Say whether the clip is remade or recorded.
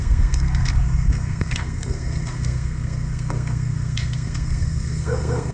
remade